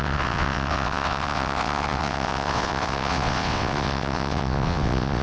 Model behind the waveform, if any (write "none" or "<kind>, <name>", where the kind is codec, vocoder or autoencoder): vocoder, WaveNeXt